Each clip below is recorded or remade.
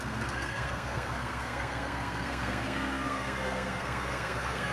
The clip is remade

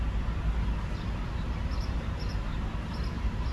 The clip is recorded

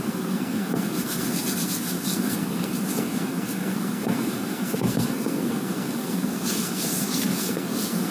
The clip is remade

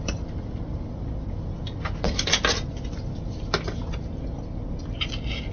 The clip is recorded